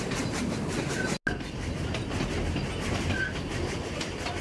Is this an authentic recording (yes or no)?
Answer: yes